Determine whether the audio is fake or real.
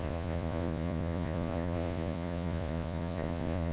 fake